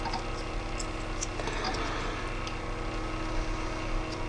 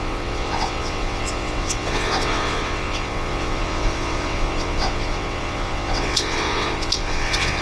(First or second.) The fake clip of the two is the second